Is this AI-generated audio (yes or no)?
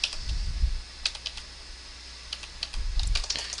no